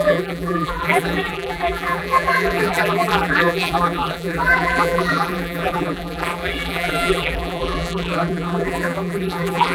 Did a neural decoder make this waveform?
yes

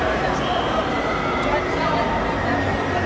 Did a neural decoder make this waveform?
no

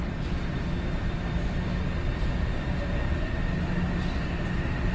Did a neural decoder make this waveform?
no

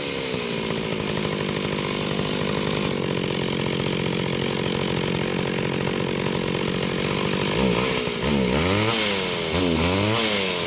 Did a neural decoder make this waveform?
no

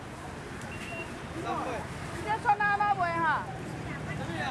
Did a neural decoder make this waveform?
no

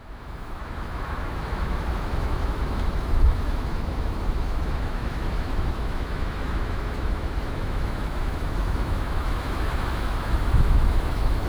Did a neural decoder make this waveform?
yes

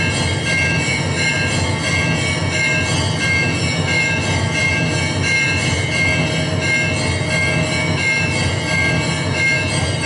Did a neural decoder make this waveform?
no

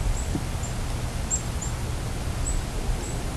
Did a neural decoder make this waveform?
no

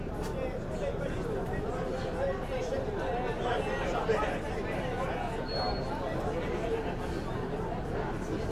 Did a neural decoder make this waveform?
no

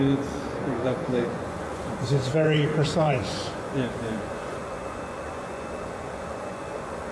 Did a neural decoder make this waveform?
yes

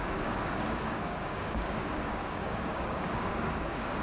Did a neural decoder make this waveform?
yes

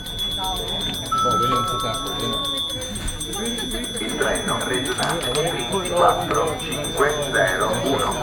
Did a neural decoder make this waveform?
no